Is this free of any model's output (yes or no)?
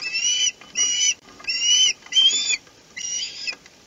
no